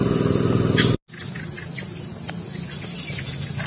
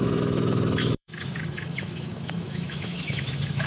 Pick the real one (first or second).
first